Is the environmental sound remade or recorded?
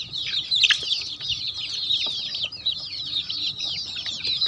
remade